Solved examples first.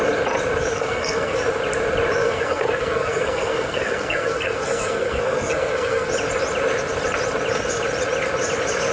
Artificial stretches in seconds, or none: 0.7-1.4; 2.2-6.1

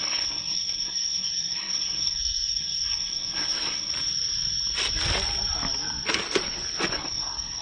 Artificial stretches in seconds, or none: 0.0-3.9; 6.9-7.6

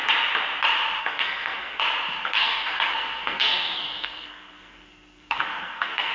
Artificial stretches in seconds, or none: 1.0-1.8; 2.2-6.1

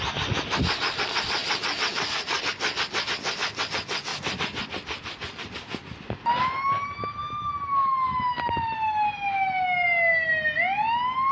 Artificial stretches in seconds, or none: none

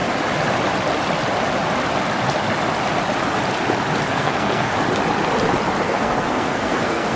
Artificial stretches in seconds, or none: 4.1-4.7; 5.8-7.2

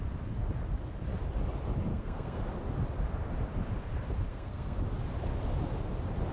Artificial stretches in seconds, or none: 1.9-2.4; 4.3-4.8

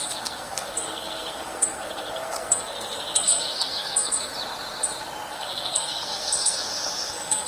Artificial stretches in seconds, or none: 0.0-4.3; 5.3-7.5

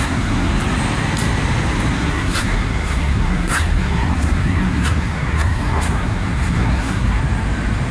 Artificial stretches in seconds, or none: 0.0-0.5; 1.9-7.2